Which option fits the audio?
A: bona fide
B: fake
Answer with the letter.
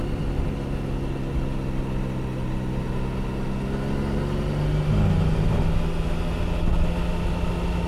A